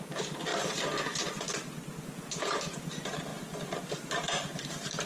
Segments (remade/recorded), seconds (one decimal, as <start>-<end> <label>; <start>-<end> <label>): 0.0-0.5 remade; 0.5-2.3 recorded; 2.3-5.1 remade